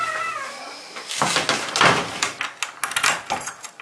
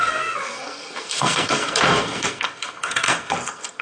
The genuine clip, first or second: first